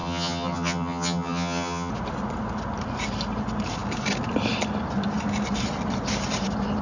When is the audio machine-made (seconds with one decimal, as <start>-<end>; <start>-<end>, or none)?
0.0-1.9